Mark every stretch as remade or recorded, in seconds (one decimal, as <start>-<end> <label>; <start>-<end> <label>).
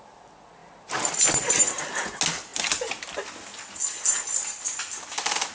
0.0-5.5 recorded